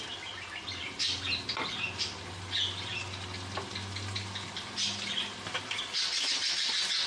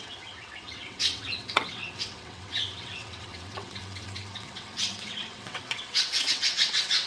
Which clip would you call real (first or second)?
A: first